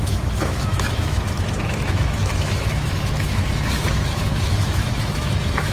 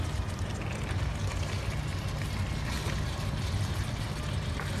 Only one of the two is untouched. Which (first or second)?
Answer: second